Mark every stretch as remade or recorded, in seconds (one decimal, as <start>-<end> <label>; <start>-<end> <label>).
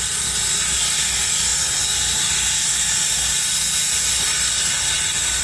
0.0-5.4 recorded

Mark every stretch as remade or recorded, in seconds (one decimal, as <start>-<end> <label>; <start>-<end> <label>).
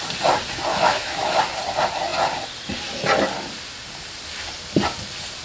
0.0-0.7 recorded; 0.7-1.4 remade; 1.4-5.4 recorded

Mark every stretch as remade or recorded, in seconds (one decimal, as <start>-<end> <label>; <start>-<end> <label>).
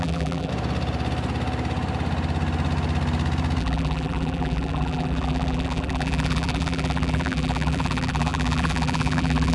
0.0-0.5 remade; 0.5-3.6 recorded; 3.6-9.5 remade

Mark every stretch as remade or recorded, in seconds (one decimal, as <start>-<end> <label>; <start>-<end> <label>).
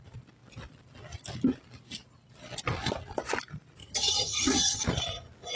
0.0-3.8 recorded; 3.8-4.8 remade; 4.8-5.6 recorded